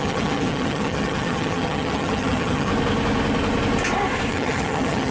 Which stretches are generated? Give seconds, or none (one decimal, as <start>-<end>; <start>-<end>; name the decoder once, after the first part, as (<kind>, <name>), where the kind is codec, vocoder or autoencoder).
0.0-2.7 (vocoder, HiFi-GAN); 4.3-5.1